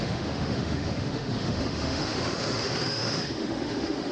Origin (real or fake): fake